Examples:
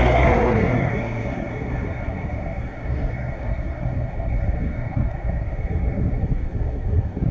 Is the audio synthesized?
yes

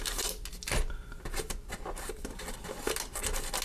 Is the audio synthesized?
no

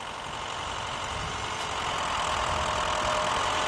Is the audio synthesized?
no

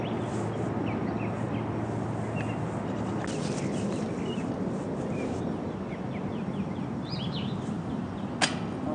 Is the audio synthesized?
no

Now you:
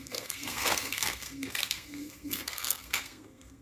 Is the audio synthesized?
yes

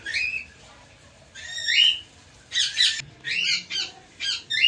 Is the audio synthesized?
no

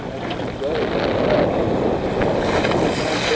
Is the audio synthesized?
no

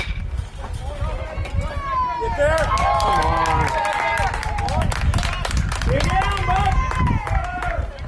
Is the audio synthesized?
no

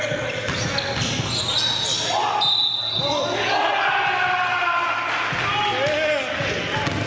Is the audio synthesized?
no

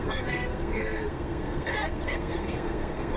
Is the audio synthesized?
yes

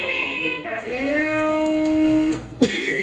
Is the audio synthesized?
yes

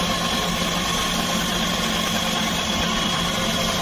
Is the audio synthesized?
no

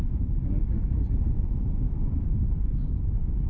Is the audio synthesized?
no